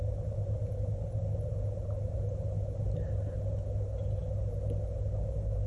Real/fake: real